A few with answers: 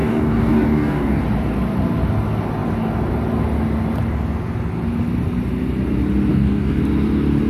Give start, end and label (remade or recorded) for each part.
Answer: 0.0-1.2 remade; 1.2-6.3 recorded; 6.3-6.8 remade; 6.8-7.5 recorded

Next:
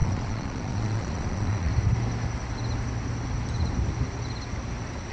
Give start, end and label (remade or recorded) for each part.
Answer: 0.0-1.7 remade; 1.7-5.1 recorded